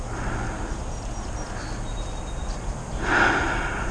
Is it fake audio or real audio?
real